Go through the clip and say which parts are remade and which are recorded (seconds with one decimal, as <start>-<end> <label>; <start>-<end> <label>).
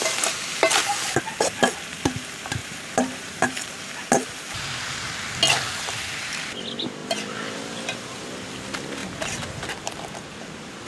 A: 0.0-2.6 recorded; 2.6-3.7 remade; 3.7-7.0 recorded; 7.0-7.6 remade; 7.6-10.9 recorded